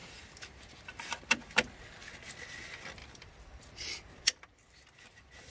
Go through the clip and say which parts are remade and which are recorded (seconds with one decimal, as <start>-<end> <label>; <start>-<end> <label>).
0.0-3.0 recorded; 3.0-3.6 remade; 3.6-5.5 recorded